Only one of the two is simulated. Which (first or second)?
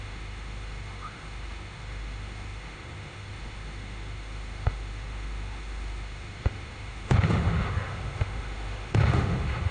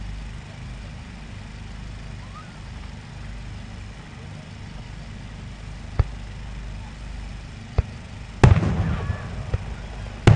first